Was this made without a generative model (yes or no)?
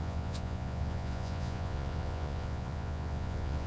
no